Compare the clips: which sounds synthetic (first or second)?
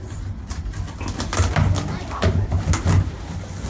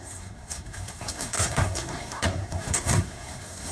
second